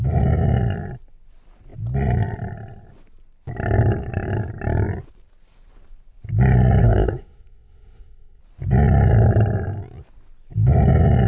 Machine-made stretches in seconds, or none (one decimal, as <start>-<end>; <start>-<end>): 6.8-8.4